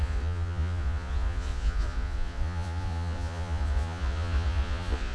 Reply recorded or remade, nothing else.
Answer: remade